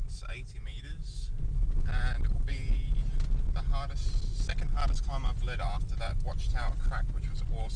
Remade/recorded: recorded